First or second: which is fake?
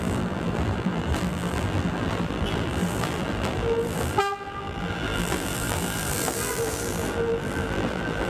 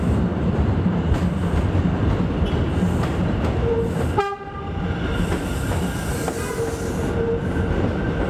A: first